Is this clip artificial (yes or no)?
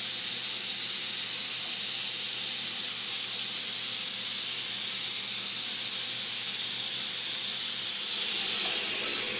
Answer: no